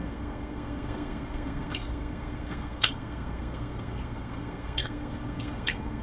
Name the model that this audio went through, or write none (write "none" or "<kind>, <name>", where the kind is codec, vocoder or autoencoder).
codec, SNAC